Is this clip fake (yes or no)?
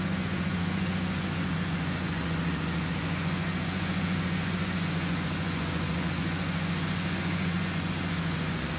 yes